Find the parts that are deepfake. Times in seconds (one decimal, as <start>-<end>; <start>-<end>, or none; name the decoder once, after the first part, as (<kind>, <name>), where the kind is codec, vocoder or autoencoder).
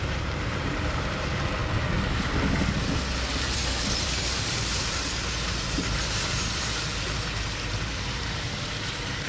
0.0-1.6 (vocoder, BigVGAN v2); 3.4-9.3